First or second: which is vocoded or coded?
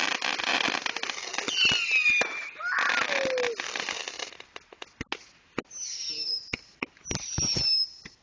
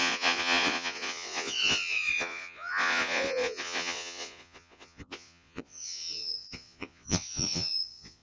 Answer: second